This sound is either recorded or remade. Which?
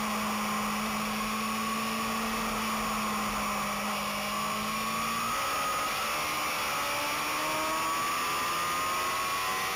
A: recorded